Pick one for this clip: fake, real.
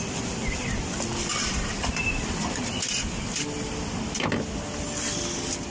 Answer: real